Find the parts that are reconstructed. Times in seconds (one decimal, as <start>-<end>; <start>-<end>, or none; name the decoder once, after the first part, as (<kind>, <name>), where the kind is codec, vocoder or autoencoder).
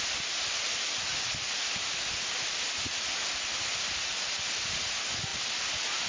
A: none